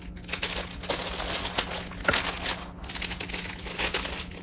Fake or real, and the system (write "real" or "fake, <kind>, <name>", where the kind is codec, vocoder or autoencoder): real